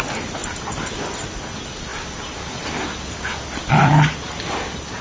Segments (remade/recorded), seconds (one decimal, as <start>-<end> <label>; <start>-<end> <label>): 0.0-5.0 recorded